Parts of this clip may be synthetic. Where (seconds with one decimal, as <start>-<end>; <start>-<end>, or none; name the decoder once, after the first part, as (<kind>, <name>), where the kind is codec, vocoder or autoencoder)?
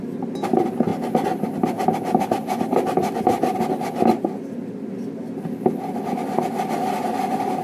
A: none